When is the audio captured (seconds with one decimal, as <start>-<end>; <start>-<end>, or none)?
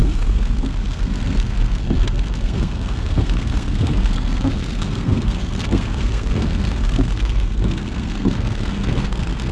none